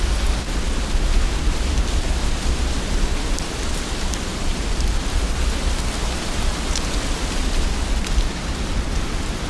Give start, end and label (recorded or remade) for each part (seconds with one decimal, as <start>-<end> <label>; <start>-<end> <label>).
0.0-4.5 recorded; 4.5-5.2 remade; 5.2-9.5 recorded